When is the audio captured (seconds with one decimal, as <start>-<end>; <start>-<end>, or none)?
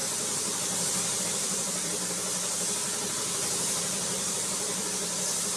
0.0-1.2; 1.9-3.1